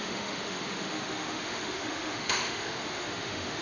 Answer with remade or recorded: remade